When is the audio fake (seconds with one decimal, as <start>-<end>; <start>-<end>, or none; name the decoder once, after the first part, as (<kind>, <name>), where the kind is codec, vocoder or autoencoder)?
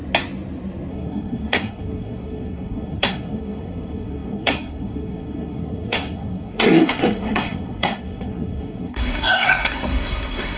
0.9-10.6 (codec, SNAC)